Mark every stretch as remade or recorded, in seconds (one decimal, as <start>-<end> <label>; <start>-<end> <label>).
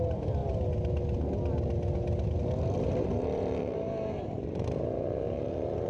0.0-0.4 remade; 0.4-2.4 recorded; 2.4-5.9 remade